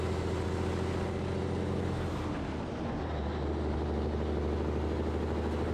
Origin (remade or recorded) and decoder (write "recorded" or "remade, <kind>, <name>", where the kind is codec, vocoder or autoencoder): recorded